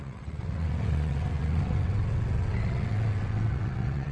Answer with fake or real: fake